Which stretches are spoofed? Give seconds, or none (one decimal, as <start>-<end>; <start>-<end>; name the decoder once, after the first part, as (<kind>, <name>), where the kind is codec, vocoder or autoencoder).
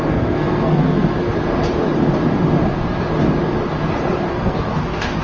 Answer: 0.0-1.2 (codec, SNAC); 4.3-5.2